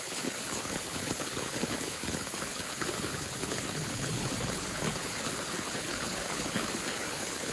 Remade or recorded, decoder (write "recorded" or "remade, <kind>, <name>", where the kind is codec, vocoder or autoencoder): remade, codec, HILCodec